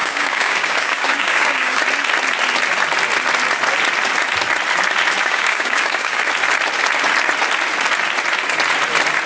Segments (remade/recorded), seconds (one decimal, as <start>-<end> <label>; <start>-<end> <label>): 0.0-1.8 remade; 1.8-5.2 recorded; 5.2-6.2 remade; 6.2-9.3 recorded

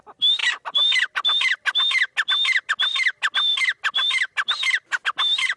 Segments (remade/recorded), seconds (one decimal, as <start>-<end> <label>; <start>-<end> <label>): 0.0-5.6 recorded

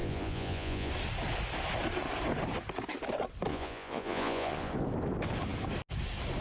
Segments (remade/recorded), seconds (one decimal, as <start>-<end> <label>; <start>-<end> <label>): 0.0-0.9 remade; 0.9-3.5 recorded; 3.5-4.7 remade; 4.7-6.4 recorded

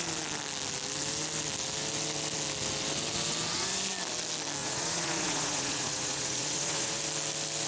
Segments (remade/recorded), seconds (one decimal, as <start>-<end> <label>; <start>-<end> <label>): 0.0-4.6 recorded; 4.6-7.0 remade; 7.0-7.7 recorded